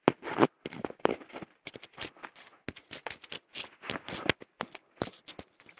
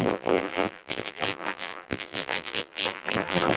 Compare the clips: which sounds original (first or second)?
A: first